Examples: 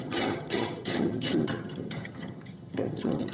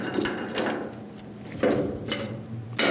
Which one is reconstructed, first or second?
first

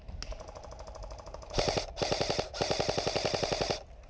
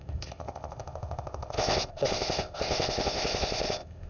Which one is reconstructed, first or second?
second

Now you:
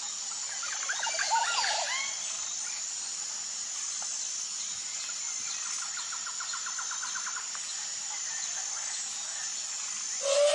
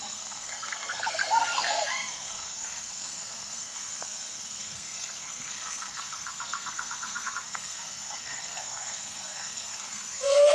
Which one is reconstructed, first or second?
second